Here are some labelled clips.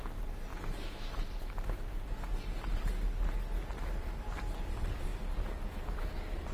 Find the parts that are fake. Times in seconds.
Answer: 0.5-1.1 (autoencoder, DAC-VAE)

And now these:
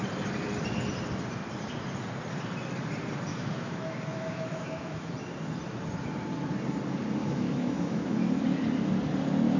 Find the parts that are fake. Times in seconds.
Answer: 3.3-5.1 (autoencoder, DAC-VAE); 7.2-8.4

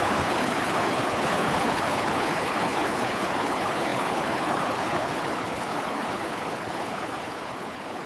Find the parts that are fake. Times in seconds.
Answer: 0.0-8.1 (codec, HILCodec)